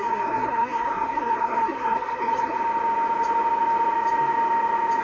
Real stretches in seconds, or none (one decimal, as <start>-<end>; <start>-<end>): 2.6-5.0